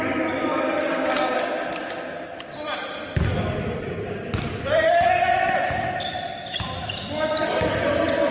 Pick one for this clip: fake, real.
real